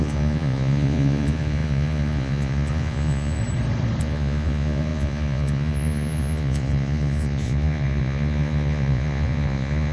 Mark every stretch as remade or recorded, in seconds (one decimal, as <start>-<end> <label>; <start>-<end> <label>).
0.0-3.4 remade; 3.4-4.0 recorded; 4.0-9.9 remade